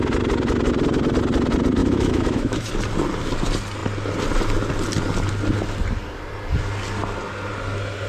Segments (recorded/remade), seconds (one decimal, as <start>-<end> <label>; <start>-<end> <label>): 0.0-1.8 recorded; 1.8-2.7 remade; 2.7-8.1 recorded

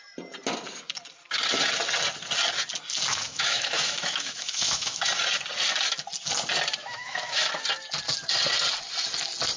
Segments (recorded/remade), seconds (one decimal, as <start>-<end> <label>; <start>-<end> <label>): 0.0-3.1 recorded; 3.1-5.0 remade; 5.0-6.8 recorded; 6.8-7.5 remade; 7.5-9.6 recorded

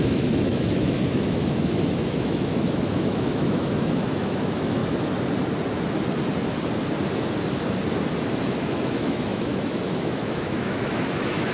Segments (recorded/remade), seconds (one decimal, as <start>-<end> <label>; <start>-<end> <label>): 0.0-4.8 remade; 4.8-8.5 recorded; 8.5-11.5 remade

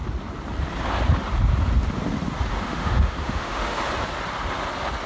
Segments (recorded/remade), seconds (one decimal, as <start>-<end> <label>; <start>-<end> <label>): 0.0-2.5 recorded; 2.5-3.8 remade; 3.8-5.1 recorded